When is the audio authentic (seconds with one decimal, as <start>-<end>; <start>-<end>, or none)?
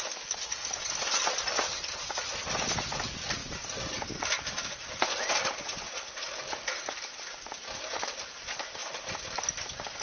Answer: 0.0-10.0